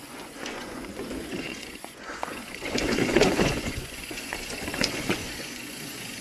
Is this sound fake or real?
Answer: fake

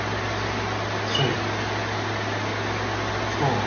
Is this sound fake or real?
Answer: real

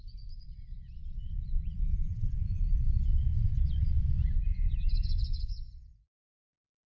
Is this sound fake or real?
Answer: fake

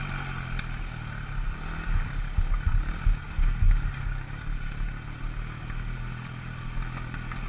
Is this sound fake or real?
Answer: real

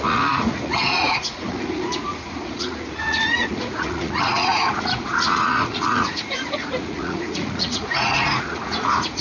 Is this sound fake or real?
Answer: fake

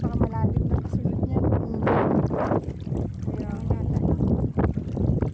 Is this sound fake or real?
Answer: real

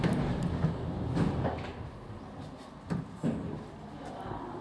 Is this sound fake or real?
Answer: real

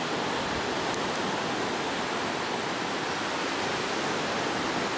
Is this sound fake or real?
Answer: real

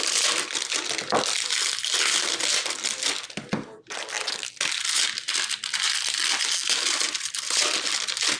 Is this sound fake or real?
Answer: real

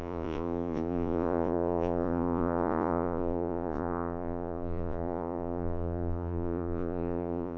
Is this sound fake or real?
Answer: fake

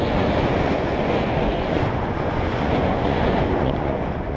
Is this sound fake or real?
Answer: fake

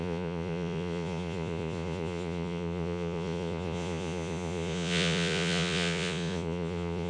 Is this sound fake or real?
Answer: fake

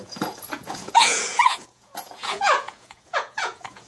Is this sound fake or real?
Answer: fake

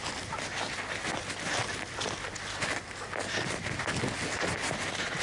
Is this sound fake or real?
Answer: real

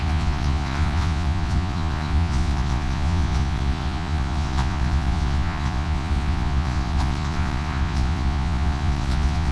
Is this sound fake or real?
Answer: fake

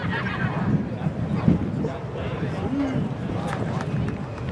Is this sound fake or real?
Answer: real